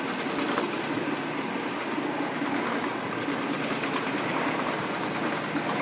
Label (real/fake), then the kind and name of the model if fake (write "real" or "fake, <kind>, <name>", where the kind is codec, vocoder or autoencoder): real